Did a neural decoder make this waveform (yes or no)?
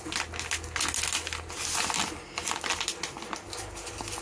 no